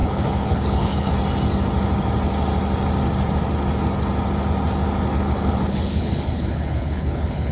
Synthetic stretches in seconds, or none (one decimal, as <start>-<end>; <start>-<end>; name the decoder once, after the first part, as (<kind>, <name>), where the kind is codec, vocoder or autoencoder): 0.0-1.1 (codec, HILCodec); 5.1-7.5